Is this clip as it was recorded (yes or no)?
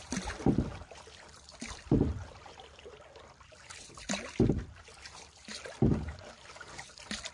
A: no